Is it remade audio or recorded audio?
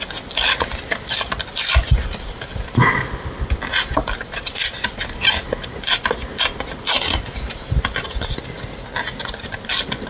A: recorded